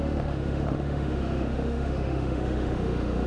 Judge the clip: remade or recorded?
remade